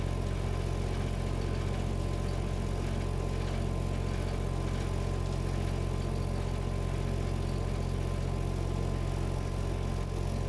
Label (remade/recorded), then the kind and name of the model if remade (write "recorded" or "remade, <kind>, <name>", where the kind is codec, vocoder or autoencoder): recorded